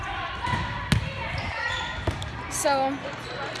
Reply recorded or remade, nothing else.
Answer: recorded